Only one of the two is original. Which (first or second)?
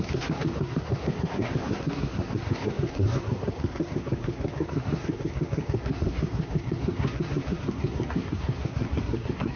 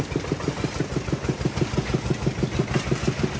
second